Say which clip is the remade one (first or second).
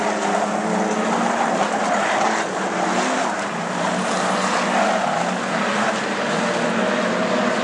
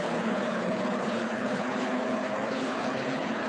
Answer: second